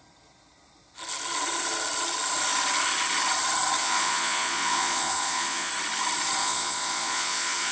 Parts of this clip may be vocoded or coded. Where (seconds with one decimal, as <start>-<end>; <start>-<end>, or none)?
3.8-5.7; 6.4-7.7